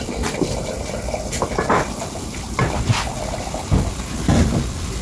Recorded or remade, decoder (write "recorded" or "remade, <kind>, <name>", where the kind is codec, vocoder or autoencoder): recorded